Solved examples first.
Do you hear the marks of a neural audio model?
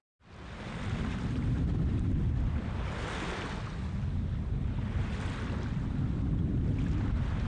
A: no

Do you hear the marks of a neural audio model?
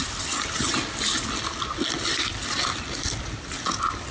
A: no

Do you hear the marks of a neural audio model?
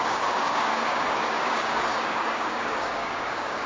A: yes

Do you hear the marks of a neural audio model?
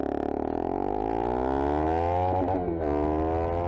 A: no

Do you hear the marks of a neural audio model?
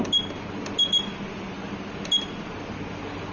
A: no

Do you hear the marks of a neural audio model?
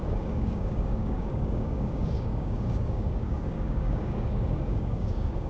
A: yes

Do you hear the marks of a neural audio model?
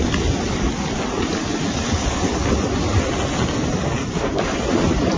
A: no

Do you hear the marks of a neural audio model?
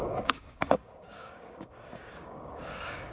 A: yes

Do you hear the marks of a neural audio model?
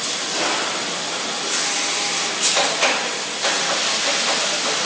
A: no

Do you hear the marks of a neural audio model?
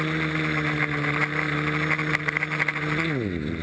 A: no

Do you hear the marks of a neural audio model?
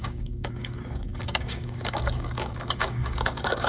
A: yes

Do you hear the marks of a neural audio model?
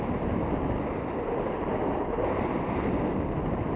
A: no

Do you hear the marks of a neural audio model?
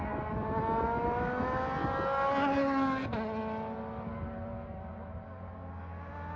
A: no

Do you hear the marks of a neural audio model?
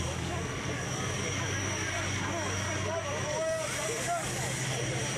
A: yes